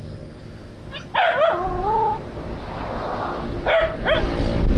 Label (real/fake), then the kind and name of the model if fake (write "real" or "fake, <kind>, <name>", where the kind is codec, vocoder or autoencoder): real